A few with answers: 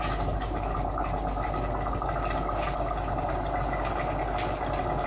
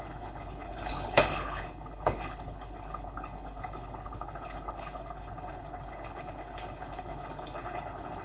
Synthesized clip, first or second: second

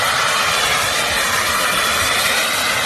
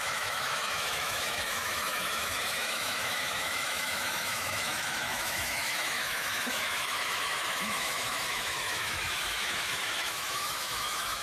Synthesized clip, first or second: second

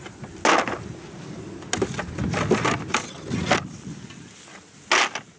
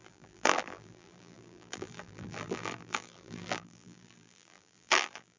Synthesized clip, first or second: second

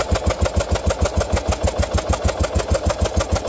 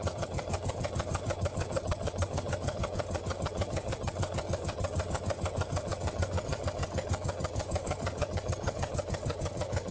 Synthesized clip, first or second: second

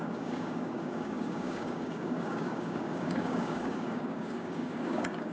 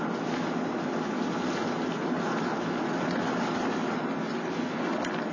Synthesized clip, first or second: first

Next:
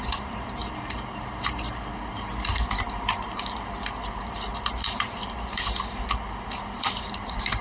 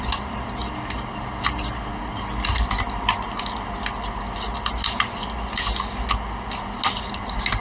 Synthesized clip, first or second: first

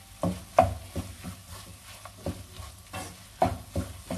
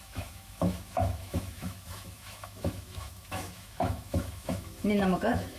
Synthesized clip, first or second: second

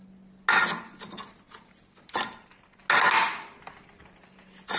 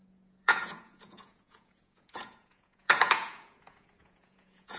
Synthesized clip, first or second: second